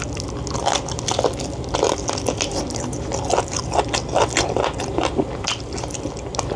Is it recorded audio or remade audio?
recorded